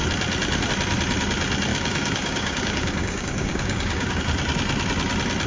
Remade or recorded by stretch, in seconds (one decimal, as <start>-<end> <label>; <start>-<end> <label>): 0.0-1.7 recorded; 1.7-4.2 remade; 4.2-5.5 recorded